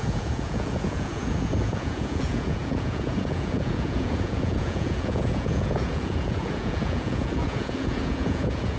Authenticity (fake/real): fake